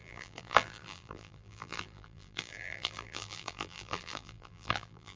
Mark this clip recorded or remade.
remade